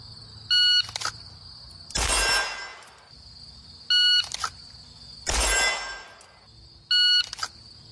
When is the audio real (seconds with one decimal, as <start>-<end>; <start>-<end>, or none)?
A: 0.0-7.9